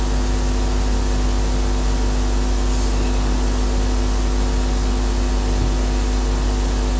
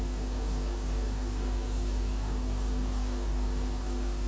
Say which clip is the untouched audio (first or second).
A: first